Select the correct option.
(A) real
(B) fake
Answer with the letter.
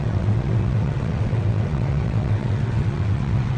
B